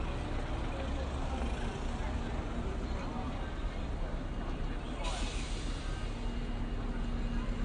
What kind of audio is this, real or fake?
real